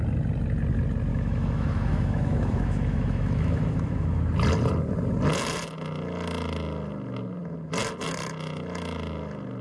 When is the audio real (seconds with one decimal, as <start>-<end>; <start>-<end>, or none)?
0.0-1.1; 4.2-9.6